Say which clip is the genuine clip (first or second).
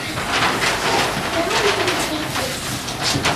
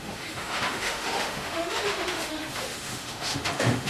first